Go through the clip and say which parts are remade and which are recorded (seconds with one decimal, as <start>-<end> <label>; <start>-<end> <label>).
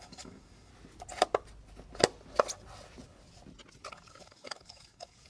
0.0-0.7 remade; 0.7-3.9 recorded; 3.9-5.3 remade